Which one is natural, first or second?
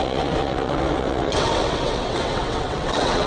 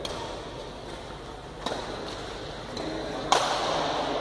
second